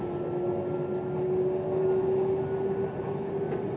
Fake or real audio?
real